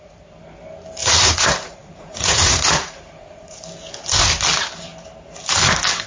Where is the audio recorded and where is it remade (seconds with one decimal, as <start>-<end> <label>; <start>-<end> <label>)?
0.0-1.0 recorded; 1.0-3.6 remade; 3.6-6.1 recorded